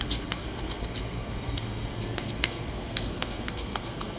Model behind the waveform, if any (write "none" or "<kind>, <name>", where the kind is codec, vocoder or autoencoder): codec, SNAC